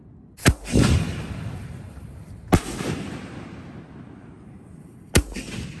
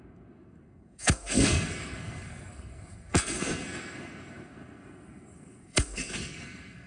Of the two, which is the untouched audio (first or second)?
first